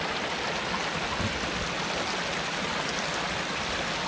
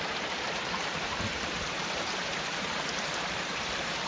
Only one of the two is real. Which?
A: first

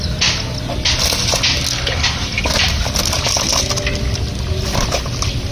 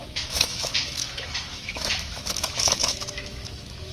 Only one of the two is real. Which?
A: first